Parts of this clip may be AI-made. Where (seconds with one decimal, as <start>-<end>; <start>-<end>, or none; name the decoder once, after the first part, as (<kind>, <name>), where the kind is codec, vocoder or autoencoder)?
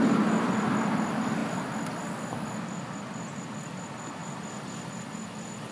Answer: none